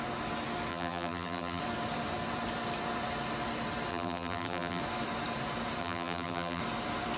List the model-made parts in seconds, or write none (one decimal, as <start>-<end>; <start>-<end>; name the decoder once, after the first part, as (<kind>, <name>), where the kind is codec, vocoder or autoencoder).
0.7-1.6 (vocoder, BigVGAN v2); 3.9-4.8; 5.8-6.6